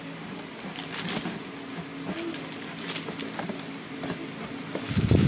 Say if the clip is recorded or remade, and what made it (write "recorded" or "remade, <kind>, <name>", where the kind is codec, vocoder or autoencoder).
recorded